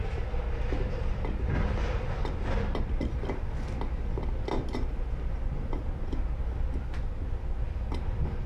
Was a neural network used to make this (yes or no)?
no